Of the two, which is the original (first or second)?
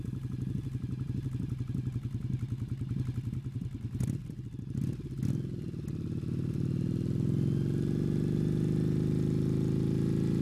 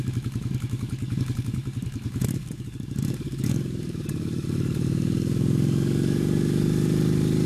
first